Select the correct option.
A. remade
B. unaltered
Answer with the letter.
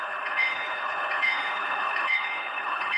A